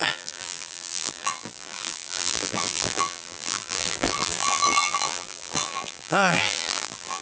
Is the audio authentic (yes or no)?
no